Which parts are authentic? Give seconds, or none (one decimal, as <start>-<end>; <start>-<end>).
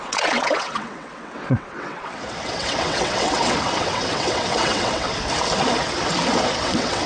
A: 5.1-6.6